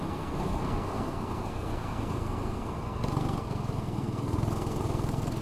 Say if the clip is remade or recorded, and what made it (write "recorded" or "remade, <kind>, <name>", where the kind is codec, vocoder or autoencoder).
remade, codec, SNAC